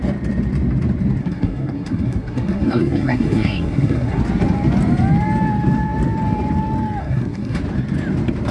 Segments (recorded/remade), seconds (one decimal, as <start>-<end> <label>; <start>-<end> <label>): 0.0-1.2 recorded; 1.2-4.2 remade; 4.2-7.0 recorded; 7.0-7.6 remade; 7.6-8.5 recorded